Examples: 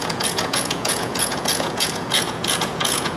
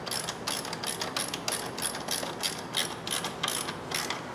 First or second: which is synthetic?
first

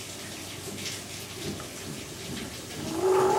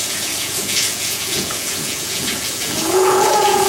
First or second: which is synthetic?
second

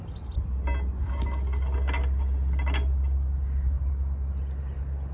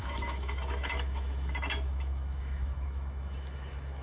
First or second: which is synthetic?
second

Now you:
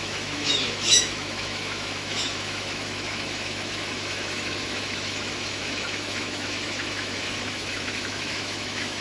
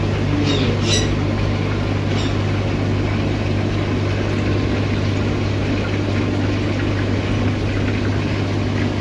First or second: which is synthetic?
first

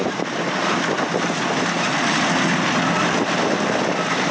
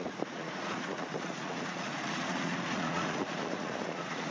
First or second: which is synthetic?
second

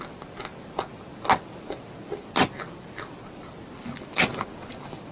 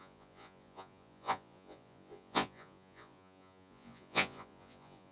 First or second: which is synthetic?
second